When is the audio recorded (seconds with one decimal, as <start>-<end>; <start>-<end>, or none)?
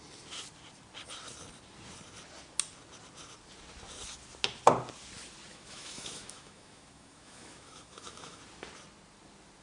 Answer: 0.0-5.5; 8.4-9.6